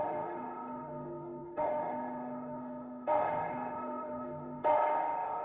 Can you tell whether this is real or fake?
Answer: fake